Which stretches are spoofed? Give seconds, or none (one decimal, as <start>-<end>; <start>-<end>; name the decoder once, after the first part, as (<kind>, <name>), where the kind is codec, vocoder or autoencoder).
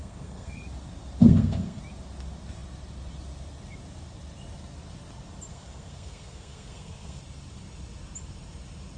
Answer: 0.0-0.6 (codec, SNAC); 1.2-1.8; 5.5-7.2